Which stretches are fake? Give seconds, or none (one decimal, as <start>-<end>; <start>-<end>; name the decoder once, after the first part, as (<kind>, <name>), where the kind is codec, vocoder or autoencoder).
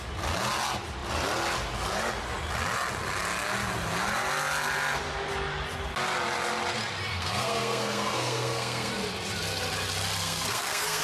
7.1-8.9 (codec, SNAC); 10.2-11.0